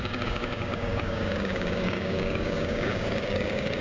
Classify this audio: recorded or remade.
remade